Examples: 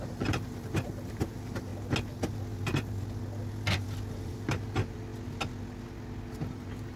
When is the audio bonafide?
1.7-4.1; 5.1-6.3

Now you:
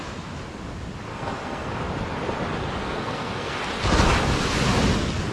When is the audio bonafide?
0.0-1.1; 1.7-2.8; 3.6-5.3